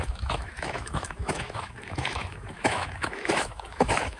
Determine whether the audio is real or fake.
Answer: fake